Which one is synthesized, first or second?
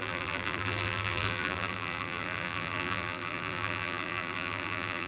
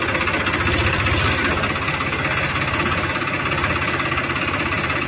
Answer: first